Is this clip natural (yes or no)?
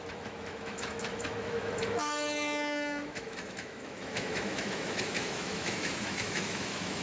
no